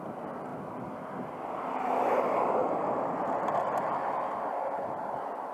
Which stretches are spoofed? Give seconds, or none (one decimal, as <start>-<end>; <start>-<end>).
none